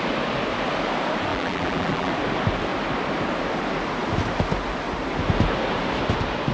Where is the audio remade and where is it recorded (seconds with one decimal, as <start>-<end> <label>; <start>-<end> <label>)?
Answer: 0.0-1.3 recorded; 1.3-2.1 remade; 2.1-6.5 recorded